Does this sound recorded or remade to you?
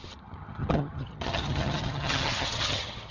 remade